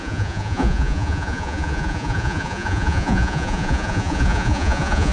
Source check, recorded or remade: remade